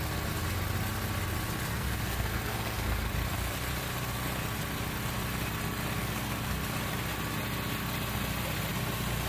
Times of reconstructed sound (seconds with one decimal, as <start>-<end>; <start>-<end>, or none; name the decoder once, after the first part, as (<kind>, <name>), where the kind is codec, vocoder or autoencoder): 1.7-3.1 (codec, SNAC); 6.0-6.6